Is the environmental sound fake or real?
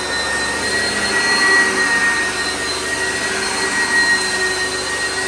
real